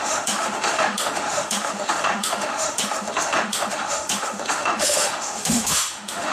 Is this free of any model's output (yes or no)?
no